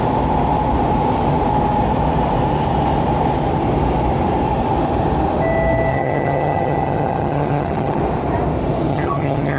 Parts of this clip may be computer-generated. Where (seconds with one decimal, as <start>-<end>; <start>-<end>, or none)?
5.9-8.0; 8.9-9.6